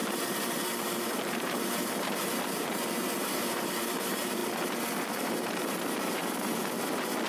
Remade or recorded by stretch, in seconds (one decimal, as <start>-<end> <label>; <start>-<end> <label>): 0.0-4.4 remade; 4.4-5.7 recorded; 5.7-6.2 remade; 6.2-7.3 recorded